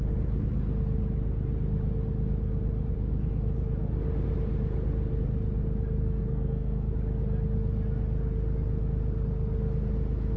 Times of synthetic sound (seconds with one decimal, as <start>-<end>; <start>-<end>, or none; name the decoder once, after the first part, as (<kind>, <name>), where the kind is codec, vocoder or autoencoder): 6.0-6.9 (codec, SNAC)